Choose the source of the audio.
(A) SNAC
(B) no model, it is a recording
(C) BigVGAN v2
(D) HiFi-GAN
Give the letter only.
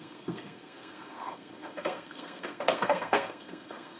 A